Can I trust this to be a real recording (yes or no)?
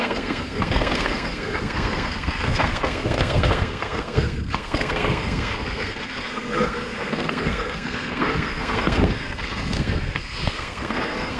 no